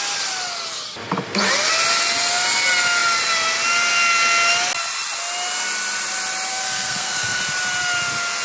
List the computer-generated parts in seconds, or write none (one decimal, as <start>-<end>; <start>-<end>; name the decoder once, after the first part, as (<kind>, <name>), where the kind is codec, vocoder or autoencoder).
6.5-7.4 (codec, SNAC)